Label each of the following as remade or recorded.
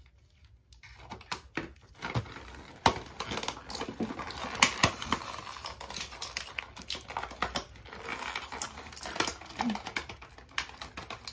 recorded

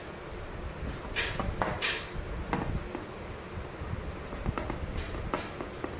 recorded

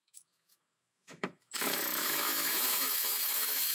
remade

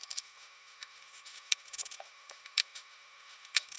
remade